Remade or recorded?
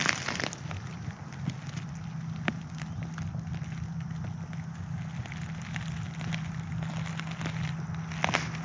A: recorded